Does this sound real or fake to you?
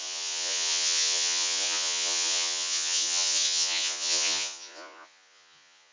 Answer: fake